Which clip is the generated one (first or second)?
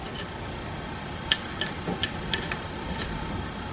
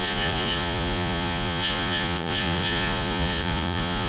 second